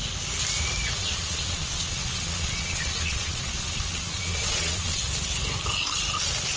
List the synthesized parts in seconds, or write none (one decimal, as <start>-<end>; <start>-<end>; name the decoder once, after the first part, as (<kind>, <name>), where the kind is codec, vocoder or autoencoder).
1.0-5.0 (vocoder, Vocos)